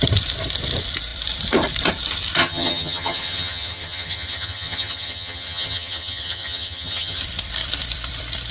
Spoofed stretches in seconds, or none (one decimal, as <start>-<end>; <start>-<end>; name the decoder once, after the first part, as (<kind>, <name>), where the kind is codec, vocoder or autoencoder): 2.4-7.2 (vocoder, HiFi-GAN)